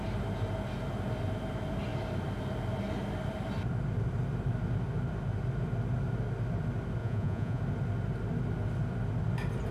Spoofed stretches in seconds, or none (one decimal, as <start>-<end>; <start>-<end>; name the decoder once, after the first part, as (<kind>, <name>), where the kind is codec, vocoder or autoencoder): 7.0-7.6 (vocoder, Vocos)